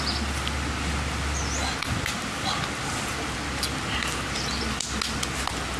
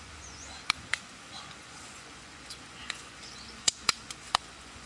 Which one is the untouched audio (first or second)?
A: first